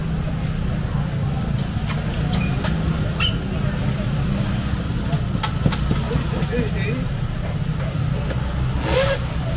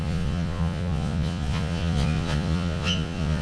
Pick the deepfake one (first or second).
second